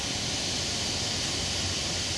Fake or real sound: real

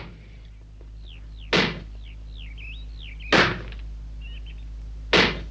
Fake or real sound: real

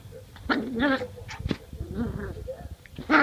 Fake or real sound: real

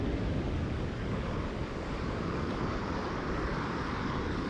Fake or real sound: fake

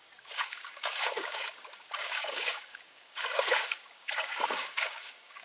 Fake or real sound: fake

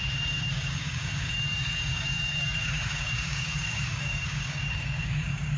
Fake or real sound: fake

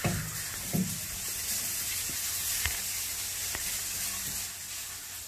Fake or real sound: real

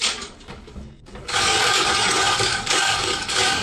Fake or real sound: fake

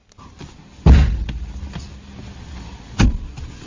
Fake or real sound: real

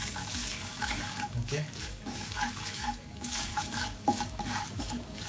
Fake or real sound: fake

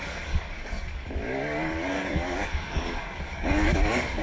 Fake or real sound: fake